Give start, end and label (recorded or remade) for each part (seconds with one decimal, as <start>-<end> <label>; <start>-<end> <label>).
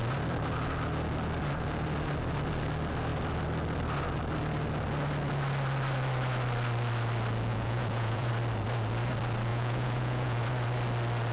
0.0-7.5 recorded; 7.5-8.3 remade; 8.3-9.5 recorded; 9.5-10.4 remade; 10.4-11.3 recorded